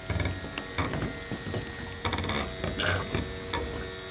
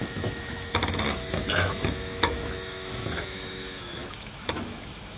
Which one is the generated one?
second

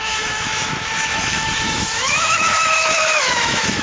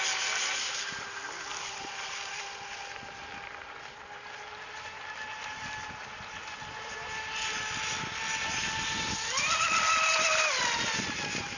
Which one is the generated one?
first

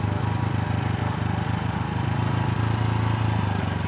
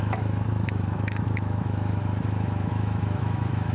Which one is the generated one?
second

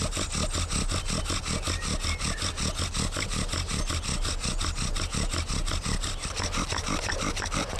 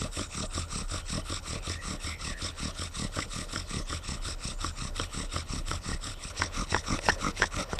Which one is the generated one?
second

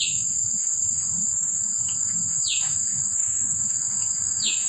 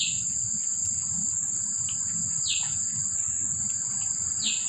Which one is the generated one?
first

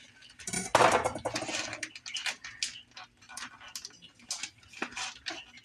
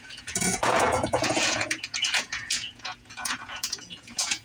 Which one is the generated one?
second